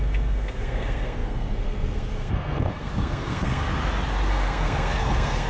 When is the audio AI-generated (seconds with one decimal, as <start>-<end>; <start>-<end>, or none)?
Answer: 0.0-3.7; 4.3-5.5